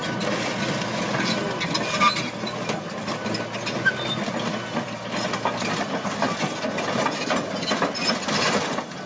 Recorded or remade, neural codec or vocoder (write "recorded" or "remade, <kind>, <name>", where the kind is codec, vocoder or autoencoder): recorded